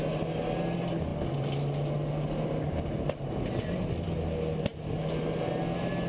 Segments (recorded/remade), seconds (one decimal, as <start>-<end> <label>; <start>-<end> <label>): 0.0-6.1 recorded